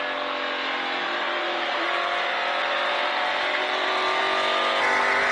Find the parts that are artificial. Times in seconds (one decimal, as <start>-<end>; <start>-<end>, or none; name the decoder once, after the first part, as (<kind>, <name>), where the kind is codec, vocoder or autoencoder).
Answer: 1.0-4.2 (vocoder, BigVGAN v2)